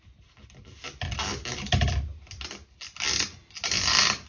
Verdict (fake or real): real